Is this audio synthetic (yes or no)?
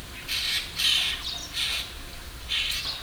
no